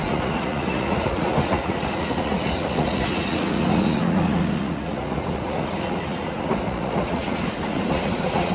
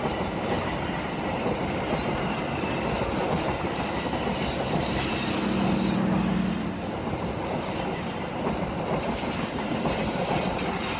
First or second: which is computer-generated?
first